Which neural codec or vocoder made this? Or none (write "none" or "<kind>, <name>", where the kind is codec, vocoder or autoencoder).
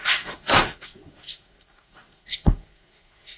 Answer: codec, SNAC